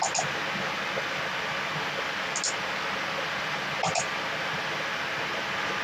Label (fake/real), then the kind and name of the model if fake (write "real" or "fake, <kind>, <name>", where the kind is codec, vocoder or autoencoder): real